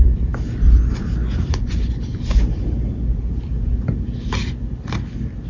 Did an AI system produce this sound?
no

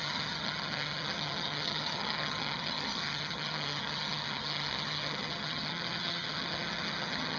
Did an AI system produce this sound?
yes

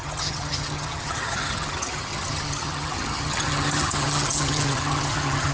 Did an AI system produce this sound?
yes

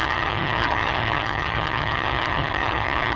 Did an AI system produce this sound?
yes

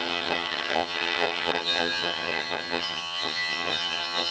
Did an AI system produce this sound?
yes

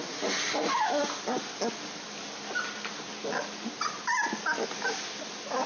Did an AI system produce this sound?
no